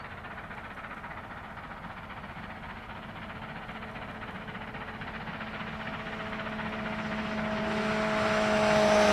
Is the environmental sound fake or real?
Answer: real